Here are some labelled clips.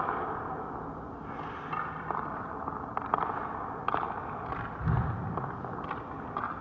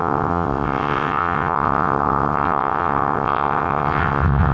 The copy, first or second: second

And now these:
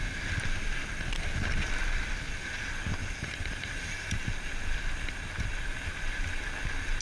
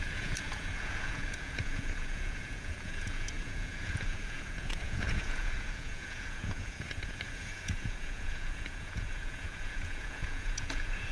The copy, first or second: second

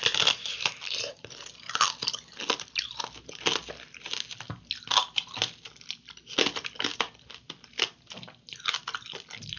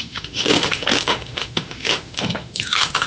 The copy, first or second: second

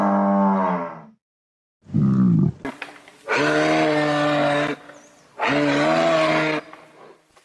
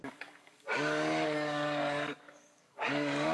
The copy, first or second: second